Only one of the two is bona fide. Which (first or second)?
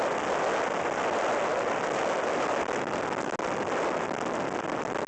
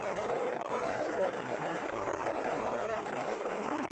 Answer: first